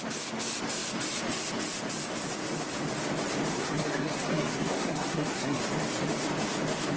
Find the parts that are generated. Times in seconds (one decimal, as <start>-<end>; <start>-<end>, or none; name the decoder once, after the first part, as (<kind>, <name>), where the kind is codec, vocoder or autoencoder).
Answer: 3.5-5.6 (codec, SNAC)